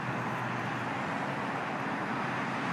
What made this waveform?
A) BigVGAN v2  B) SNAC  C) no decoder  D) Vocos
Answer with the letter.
C